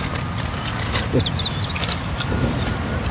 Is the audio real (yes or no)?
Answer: yes